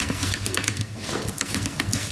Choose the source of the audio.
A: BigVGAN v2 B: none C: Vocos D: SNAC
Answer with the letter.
D